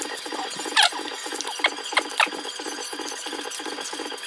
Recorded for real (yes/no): yes